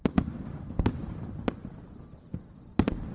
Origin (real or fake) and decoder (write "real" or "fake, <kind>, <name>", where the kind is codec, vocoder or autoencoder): fake, vocoder, BigVGAN v2